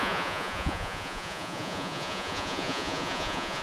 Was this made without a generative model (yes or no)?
no